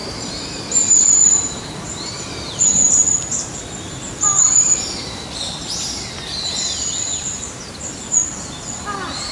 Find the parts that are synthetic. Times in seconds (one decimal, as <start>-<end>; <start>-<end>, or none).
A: 0.0-4.7